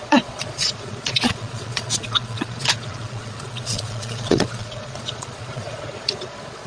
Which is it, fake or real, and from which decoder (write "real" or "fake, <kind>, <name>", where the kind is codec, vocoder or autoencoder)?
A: fake, vocoder, Vocos